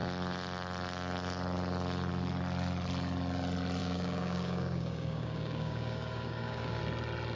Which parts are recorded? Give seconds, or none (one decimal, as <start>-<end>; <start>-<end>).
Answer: 0.0-3.8; 6.8-7.4